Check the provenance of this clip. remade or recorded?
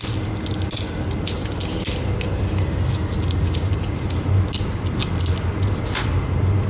recorded